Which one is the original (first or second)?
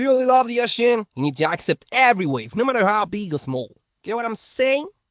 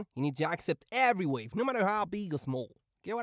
second